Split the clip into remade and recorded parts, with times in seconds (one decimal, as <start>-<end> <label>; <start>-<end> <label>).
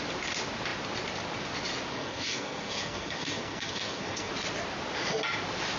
0.0-1.9 recorded; 1.9-4.3 remade; 4.3-5.8 recorded